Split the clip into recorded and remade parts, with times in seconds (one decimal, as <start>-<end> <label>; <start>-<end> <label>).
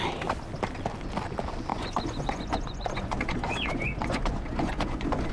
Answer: 0.0-1.7 recorded; 1.7-5.3 remade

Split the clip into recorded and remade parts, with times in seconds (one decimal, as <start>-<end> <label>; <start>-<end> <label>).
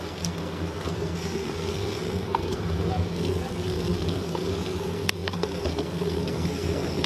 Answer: 0.0-7.1 remade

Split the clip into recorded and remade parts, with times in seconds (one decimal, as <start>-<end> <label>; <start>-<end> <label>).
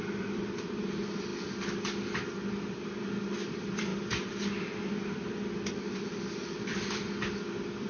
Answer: 0.0-1.3 remade; 1.3-3.5 recorded; 3.5-7.9 remade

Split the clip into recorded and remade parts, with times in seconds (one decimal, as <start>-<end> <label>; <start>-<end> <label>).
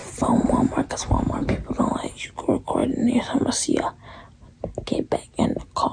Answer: 0.0-0.8 remade; 0.8-1.4 recorded; 1.4-2.0 remade; 2.0-5.9 recorded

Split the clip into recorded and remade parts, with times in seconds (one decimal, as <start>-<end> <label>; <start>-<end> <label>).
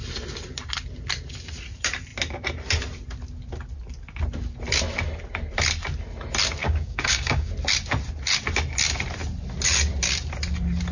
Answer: 0.0-6.6 recorded; 6.6-7.5 remade; 7.5-10.9 recorded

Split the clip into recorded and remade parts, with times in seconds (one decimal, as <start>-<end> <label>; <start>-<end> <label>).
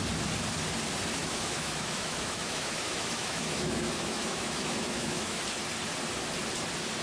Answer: 0.0-1.2 recorded; 1.2-5.4 remade; 5.4-7.0 recorded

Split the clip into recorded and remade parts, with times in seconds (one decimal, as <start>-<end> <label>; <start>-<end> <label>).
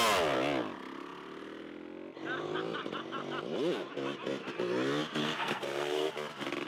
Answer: 0.0-5.2 recorded; 5.2-6.1 remade; 6.1-6.7 recorded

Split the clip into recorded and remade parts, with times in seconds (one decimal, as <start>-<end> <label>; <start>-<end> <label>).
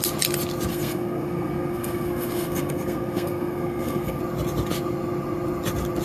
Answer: 0.0-0.7 recorded; 0.7-4.2 remade; 4.2-6.0 recorded